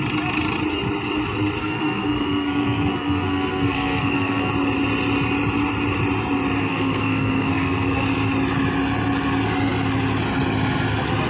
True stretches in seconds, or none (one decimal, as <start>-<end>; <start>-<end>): 0.0-1.6; 4.5-6.6; 8.0-11.3